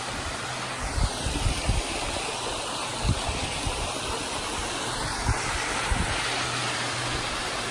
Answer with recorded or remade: recorded